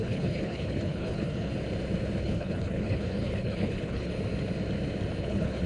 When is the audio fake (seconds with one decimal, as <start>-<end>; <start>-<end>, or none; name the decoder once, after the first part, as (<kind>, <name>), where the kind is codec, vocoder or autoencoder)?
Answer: 0.0-1.5 (codec, HILCodec); 2.2-4.1; 5.2-5.7